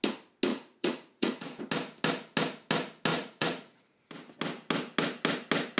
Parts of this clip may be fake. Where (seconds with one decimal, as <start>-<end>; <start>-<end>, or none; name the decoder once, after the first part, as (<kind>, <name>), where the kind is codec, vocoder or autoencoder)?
0.5-1.6 (vocoder, Vocos); 3.1-4.0